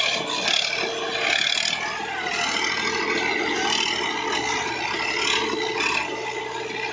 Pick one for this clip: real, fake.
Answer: real